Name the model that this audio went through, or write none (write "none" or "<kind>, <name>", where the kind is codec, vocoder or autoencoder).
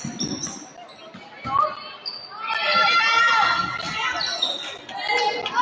none